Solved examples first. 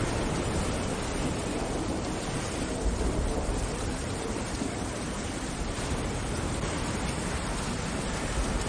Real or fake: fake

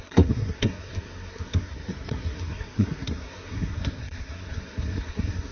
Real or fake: fake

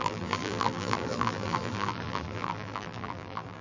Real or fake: fake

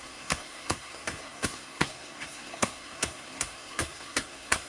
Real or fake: fake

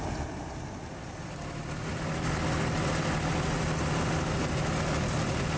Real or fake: real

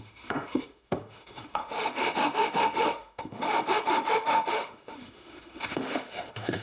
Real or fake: fake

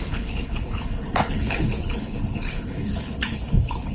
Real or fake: fake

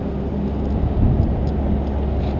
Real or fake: real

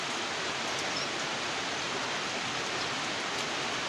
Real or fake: real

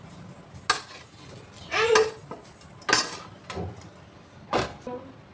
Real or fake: real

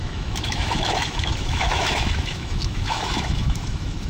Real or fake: fake